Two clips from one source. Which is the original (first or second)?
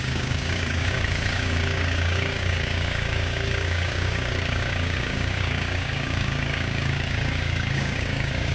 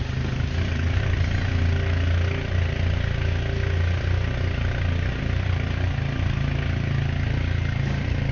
second